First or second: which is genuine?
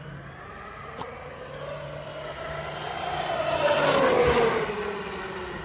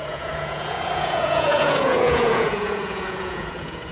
first